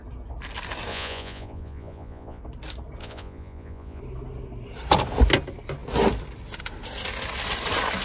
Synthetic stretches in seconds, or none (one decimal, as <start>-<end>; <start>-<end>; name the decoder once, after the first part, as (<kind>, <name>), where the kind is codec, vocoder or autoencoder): 0.9-2.4 (vocoder, Vocos); 3.0-4.0

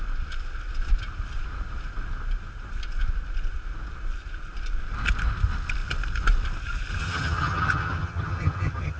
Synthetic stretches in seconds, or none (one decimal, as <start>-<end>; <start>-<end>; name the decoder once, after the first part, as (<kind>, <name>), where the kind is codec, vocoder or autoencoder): 7.0-9.0 (vocoder, HiFi-GAN)

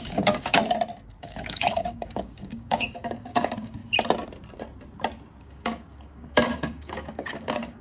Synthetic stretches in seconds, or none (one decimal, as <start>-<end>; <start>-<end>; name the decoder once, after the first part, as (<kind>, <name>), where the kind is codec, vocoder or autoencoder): 0.0-0.6 (codec, DAC); 1.2-3.8; 5.4-7.8

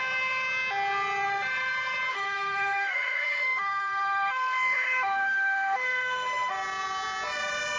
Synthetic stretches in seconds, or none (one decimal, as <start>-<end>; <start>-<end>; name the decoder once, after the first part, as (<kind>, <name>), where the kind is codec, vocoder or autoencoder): 2.1-6.5 (autoencoder, DAC-VAE)

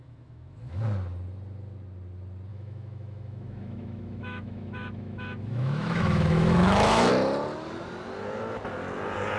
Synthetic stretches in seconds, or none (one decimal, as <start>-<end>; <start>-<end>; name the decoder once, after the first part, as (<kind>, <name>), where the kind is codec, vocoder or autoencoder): 0.0-0.8 (autoencoder, DAC-VAE); 2.5-7.1